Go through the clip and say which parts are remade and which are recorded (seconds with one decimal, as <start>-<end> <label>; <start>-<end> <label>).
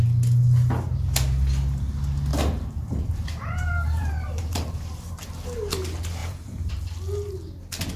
0.0-2.3 recorded; 2.3-5.3 remade; 5.3-6.2 recorded; 6.2-6.7 remade; 6.7-8.0 recorded